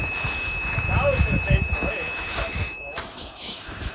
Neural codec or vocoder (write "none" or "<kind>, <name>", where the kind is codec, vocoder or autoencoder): autoencoder, DAC-VAE